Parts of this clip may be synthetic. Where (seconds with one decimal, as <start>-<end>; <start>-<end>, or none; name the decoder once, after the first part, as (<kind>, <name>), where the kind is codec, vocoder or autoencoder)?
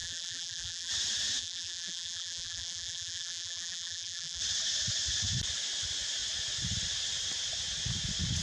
0.0-0.9 (vocoder, BigVGAN v2); 1.4-4.4